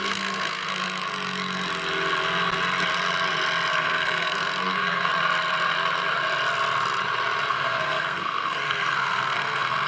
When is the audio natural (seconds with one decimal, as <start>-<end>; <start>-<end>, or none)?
0.7-3.7; 5.1-7.5